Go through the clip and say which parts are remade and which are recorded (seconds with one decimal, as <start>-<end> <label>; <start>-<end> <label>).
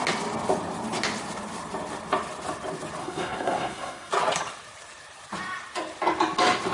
0.0-3.0 recorded; 3.0-4.1 remade; 4.1-6.7 recorded